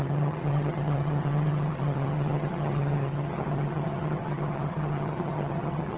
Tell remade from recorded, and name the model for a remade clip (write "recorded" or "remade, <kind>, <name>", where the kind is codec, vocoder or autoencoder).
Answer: remade, vocoder, HiFi-GAN